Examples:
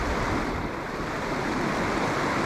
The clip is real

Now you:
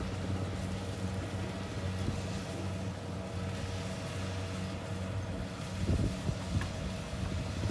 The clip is real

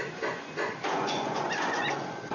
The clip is fake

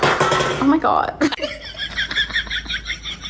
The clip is real